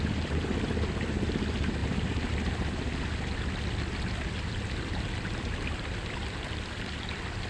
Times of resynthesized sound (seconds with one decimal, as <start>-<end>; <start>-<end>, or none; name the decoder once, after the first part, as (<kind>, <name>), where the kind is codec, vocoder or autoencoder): none